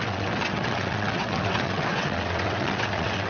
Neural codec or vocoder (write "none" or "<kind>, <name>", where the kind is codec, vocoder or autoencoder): vocoder, WaveNeXt